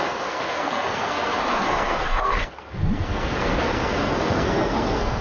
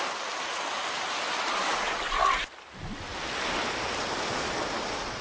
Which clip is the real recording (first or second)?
second